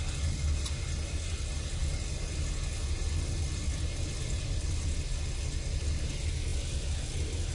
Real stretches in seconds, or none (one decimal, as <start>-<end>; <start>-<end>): 0.0-7.5